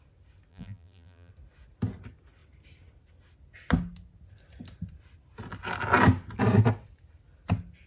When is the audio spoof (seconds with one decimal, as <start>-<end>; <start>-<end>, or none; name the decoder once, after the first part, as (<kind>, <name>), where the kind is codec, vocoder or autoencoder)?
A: 0.5-1.3 (vocoder, BigVGAN v2)